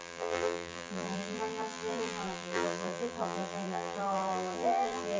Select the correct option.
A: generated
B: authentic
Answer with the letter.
A